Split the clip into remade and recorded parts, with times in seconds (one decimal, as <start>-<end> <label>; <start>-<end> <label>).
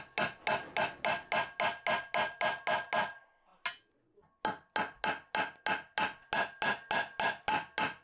0.0-8.0 recorded